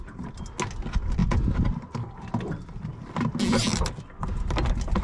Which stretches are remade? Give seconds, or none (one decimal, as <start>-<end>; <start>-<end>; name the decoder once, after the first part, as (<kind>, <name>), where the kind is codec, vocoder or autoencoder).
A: none